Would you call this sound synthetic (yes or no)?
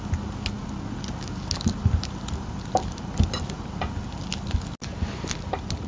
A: no